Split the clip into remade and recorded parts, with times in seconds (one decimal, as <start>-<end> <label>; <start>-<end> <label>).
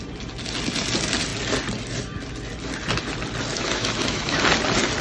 0.0-3.5 recorded; 3.5-4.4 remade; 4.4-5.0 recorded